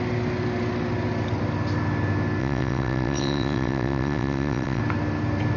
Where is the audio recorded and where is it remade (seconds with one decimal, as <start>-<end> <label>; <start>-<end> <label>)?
0.0-2.4 recorded; 2.4-4.8 remade; 4.8-5.6 recorded